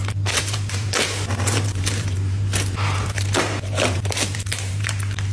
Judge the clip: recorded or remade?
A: remade